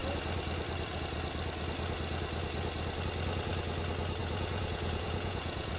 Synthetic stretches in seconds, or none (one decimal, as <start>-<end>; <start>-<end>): 4.2-5.8